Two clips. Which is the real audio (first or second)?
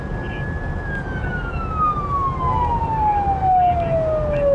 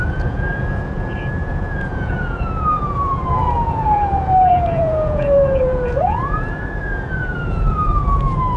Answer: first